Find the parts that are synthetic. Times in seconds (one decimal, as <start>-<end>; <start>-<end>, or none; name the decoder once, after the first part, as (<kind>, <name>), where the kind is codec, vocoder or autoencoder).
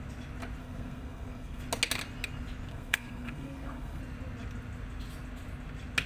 0.6-1.6 (codec, SNAC); 2.7-4.0